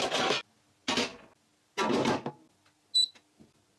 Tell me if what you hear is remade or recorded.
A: recorded